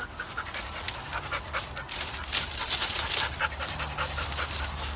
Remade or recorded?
recorded